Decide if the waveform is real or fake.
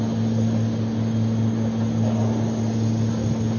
real